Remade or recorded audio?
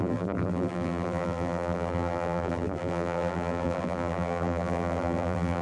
remade